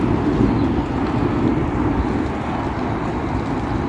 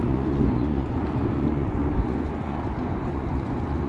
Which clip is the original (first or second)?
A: first